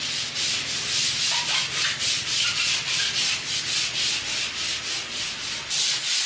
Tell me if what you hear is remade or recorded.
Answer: recorded